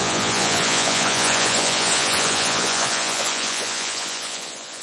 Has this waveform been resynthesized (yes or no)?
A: yes